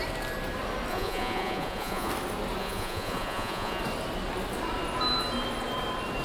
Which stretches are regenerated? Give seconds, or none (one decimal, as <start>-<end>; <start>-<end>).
0.9-2.1; 2.6-3.8